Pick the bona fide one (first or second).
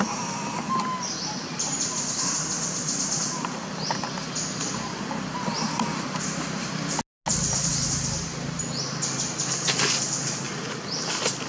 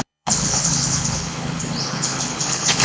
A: first